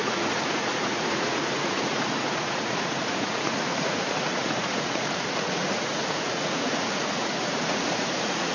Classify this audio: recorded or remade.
remade